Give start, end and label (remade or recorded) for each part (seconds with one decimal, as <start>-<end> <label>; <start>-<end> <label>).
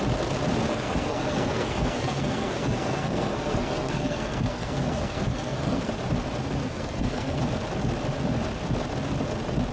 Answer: 0.0-0.7 recorded; 0.7-5.9 remade; 5.9-6.6 recorded; 6.6-7.4 remade; 7.4-9.7 recorded